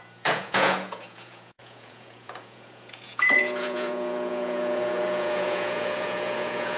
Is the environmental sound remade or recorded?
remade